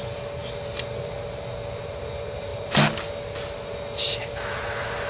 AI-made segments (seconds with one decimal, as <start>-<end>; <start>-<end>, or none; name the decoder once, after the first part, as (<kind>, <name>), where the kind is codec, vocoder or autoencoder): none